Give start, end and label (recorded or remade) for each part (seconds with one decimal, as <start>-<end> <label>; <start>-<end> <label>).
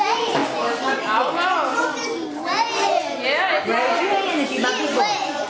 0.0-5.5 recorded